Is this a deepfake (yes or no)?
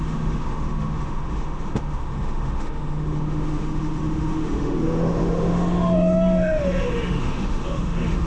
yes